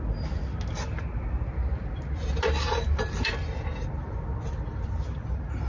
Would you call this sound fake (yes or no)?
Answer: no